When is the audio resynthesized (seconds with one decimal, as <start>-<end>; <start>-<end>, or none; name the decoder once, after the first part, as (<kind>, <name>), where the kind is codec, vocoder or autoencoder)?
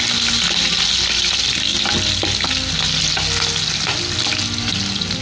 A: none